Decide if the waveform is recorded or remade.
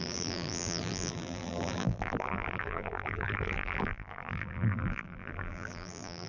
remade